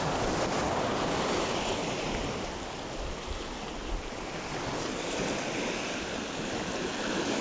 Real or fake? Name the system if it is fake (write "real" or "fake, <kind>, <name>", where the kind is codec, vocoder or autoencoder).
real